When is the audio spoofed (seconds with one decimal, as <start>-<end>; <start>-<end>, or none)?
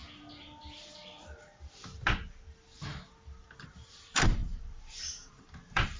3.6-6.0